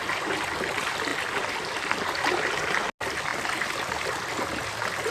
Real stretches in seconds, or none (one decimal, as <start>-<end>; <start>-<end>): 0.0-5.1